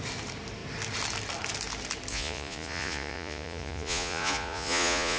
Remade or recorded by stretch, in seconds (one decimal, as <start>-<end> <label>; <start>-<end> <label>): 0.0-2.1 recorded; 2.1-5.2 remade